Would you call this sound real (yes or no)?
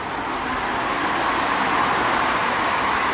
yes